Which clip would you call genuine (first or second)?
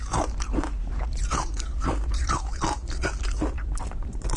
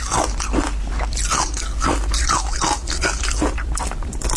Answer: second